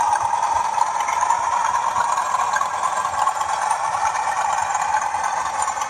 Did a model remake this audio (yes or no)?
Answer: yes